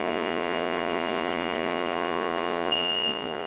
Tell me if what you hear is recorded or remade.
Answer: remade